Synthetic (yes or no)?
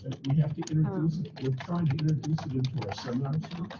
no